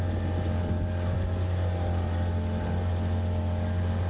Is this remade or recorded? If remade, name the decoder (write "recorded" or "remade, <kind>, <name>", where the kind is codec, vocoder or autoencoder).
recorded